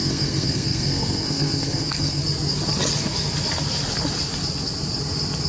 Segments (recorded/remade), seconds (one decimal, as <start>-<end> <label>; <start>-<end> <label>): 0.0-2.2 remade; 2.2-5.5 recorded